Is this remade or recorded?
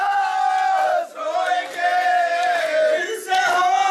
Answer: recorded